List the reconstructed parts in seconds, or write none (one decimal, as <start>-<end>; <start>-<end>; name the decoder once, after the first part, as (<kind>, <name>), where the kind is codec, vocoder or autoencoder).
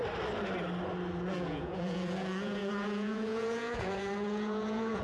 1.3-5.0 (vocoder, Vocos)